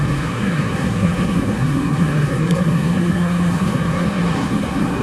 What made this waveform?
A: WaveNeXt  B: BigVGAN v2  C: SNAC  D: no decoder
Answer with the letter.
C